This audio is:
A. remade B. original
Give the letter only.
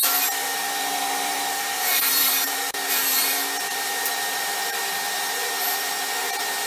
A